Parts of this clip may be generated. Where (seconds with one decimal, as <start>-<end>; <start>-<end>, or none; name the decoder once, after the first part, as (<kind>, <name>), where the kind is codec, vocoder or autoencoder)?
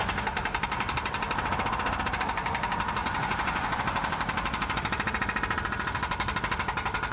3.0-3.8 (vocoder, Vocos)